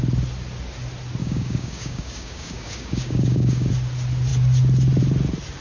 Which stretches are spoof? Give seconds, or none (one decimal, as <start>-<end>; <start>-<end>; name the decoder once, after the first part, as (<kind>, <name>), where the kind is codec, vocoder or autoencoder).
1.2-3.7 (codec, DAC)